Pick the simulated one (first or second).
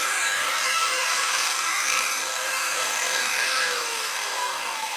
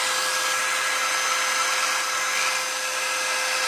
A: first